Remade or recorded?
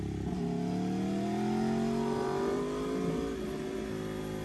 recorded